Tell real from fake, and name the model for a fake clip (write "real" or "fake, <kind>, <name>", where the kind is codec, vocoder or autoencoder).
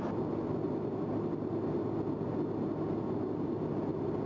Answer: real